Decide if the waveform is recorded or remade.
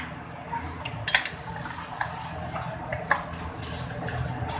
recorded